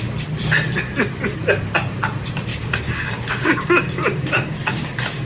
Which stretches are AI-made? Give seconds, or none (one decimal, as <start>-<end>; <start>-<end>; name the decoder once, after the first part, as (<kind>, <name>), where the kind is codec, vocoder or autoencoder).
2.5-5.3 (codec, DAC)